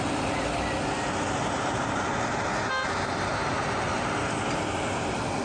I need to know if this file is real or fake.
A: real